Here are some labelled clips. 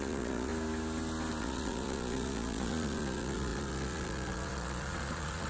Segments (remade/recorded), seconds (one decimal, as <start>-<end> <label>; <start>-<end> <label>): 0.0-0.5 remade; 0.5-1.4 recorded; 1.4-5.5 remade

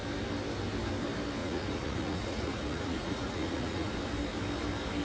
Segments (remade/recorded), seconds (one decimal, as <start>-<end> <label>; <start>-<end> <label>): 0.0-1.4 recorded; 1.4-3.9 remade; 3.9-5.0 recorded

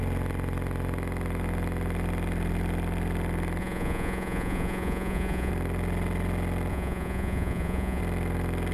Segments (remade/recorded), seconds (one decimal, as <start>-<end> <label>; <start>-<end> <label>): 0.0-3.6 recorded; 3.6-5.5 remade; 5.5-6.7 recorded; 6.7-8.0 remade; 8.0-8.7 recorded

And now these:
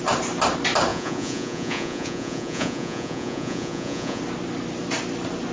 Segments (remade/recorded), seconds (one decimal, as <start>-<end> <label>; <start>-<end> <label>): 0.0-0.9 recorded; 0.9-4.2 remade; 4.2-5.5 recorded

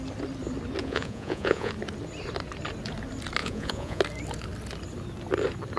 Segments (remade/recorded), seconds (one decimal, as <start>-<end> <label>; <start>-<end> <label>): 0.0-0.8 recorded; 0.8-1.7 remade; 1.7-3.4 recorded; 3.4-4.0 remade; 4.0-5.8 recorded

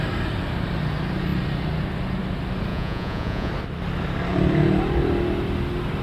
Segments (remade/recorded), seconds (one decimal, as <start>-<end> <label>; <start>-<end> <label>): 0.0-2.7 recorded; 2.7-3.5 remade; 3.5-6.0 recorded